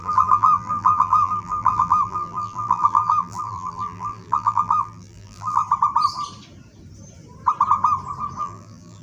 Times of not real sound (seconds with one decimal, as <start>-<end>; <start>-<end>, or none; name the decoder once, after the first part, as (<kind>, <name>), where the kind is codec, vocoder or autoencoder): 0.0-5.6 (vocoder, BigVGAN v2); 8.4-9.0